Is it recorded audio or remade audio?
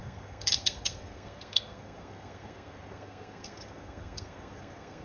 remade